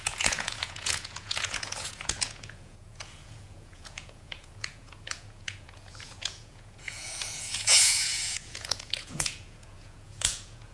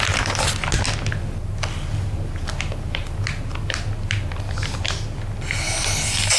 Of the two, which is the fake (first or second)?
first